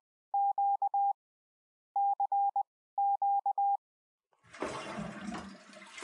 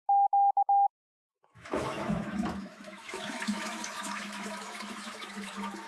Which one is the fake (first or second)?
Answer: second